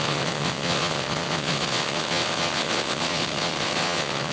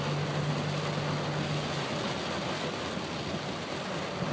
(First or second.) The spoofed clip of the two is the first